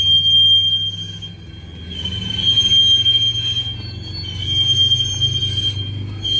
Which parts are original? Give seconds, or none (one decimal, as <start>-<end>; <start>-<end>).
0.0-6.4